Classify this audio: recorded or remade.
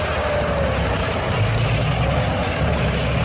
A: recorded